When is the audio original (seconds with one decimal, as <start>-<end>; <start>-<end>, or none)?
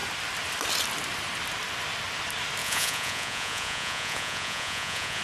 0.0-2.6